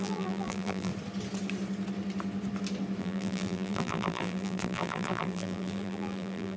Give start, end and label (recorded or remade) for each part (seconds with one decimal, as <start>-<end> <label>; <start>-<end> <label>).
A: 0.0-0.9 remade; 0.9-3.0 recorded; 3.0-6.6 remade